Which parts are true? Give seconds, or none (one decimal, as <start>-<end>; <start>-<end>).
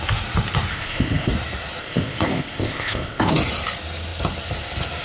0.0-0.7; 1.3-1.8; 3.3-5.0